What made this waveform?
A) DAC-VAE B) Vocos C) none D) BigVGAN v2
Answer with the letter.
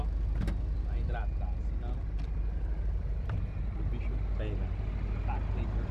C